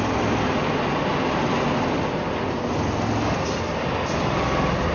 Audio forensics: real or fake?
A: real